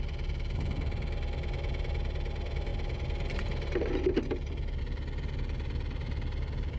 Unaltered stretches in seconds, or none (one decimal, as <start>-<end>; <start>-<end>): 0.0-6.8